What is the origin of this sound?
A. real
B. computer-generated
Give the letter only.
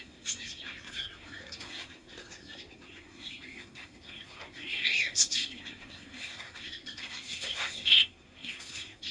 B